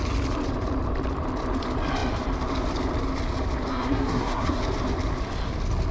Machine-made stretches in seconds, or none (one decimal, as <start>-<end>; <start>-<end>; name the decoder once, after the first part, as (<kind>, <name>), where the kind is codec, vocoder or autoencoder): 3.7-4.6 (codec, SNAC)